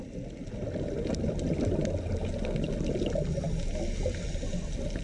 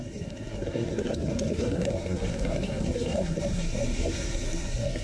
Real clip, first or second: first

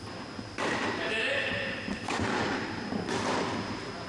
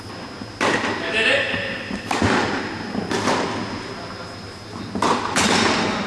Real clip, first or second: second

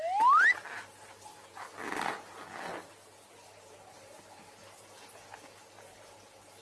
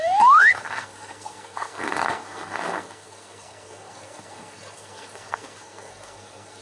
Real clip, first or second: first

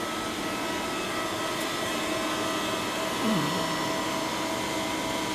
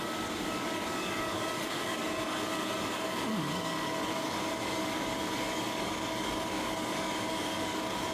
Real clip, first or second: first